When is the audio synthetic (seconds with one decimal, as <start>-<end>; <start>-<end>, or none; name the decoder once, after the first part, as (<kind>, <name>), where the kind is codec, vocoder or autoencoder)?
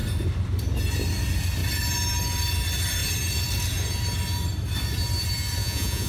5.6-6.1 (vocoder, Vocos)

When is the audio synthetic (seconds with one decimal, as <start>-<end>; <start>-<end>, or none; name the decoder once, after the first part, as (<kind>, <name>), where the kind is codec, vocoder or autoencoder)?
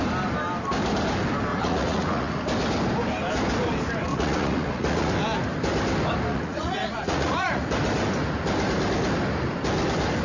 1.5-2.4 (vocoder, Vocos); 4.1-5.1; 6.3-7.6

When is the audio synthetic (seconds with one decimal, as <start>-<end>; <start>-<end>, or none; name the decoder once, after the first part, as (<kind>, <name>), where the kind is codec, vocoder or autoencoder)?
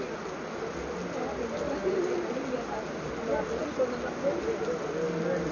none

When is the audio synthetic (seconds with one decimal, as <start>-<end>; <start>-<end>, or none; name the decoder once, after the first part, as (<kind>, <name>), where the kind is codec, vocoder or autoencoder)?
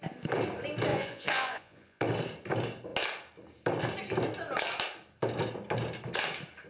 0.9-2.0 (vocoder, Vocos)